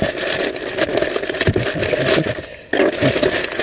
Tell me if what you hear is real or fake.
real